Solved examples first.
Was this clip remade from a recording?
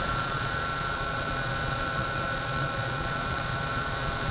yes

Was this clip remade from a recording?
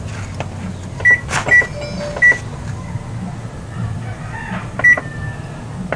no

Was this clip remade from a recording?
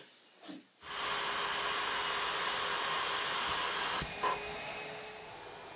no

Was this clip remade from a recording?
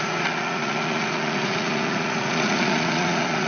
yes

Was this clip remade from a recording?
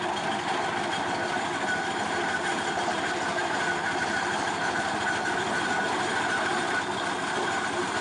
no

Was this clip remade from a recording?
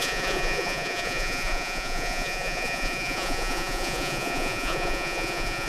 yes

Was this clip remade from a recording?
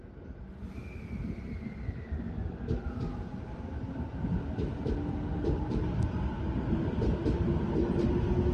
no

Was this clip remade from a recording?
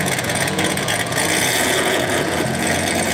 yes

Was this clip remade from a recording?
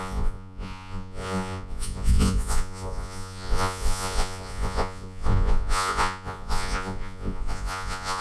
yes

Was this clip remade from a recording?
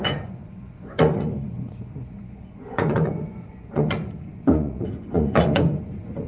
yes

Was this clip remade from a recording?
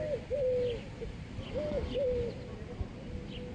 no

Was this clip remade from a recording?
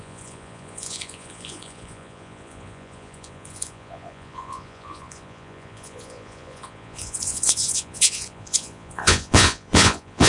yes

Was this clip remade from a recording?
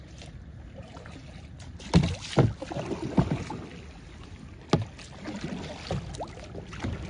no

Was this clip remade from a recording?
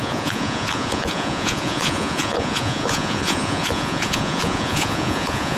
yes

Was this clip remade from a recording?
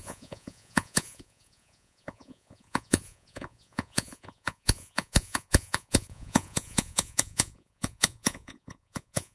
yes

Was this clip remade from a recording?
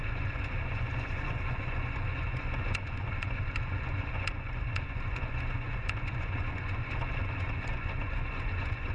yes